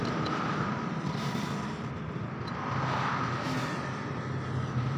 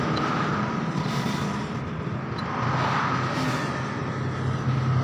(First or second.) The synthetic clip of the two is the first